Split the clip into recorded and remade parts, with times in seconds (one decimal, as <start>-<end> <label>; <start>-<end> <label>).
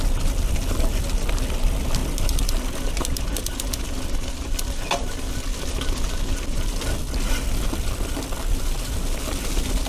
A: 0.0-9.9 recorded